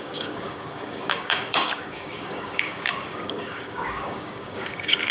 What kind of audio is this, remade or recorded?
remade